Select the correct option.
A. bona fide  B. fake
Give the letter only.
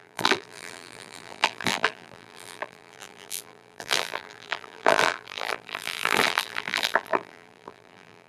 B